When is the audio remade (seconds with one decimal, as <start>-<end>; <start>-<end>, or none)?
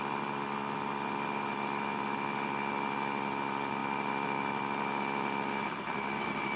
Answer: 3.8-5.0